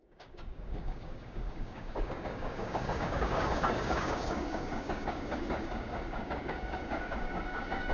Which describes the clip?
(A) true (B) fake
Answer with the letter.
B